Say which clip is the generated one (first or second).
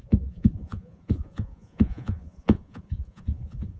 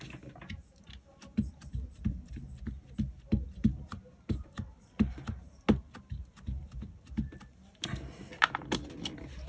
first